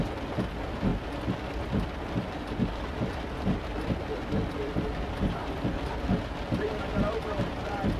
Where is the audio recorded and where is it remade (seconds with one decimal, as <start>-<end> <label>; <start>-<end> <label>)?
0.0-8.0 recorded